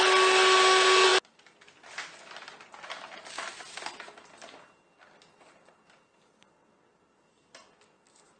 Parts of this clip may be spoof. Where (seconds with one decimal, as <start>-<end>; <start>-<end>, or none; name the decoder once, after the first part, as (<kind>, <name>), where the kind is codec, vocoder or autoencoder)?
none

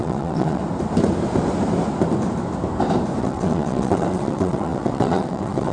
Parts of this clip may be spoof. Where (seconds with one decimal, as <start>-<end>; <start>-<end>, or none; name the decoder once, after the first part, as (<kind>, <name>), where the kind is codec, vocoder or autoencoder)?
0.0-0.6 (vocoder, WaveNeXt); 3.2-5.7

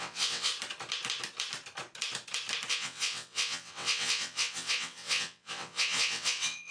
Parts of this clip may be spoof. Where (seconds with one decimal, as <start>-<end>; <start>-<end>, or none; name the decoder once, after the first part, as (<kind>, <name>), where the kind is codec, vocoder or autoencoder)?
0.0-0.5 (vocoder, WaveNeXt); 2.7-6.7

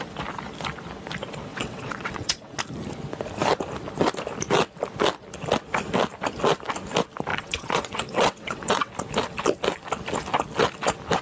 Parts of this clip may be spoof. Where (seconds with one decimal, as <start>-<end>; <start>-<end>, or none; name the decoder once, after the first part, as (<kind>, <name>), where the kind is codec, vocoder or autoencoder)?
1.5-2.6 (vocoder, WaveNeXt); 7.3-8.9

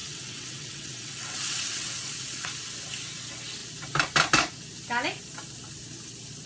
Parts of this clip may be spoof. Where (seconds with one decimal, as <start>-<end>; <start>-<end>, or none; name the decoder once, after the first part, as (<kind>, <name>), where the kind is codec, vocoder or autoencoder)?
0.0-2.5 (vocoder, WaveNeXt)